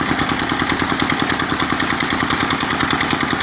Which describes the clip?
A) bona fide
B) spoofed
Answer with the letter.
A